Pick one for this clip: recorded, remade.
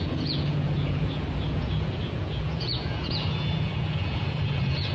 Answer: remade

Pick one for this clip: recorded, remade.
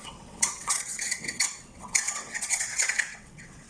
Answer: remade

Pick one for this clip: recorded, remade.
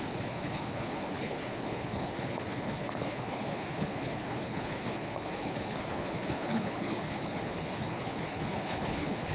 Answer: remade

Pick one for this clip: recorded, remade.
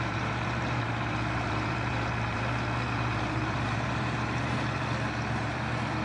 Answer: remade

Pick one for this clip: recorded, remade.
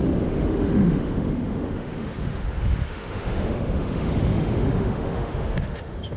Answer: remade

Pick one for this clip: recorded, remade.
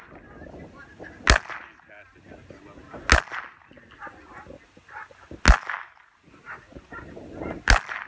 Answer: recorded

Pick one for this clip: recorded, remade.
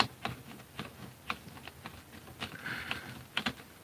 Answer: recorded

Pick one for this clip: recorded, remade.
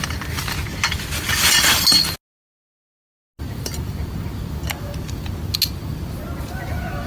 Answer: recorded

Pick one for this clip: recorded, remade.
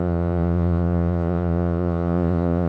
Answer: remade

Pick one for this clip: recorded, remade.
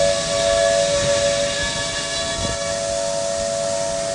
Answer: recorded